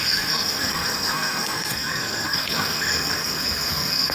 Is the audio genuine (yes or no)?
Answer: no